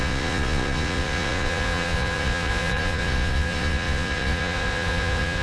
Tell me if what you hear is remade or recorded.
remade